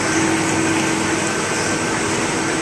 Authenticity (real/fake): real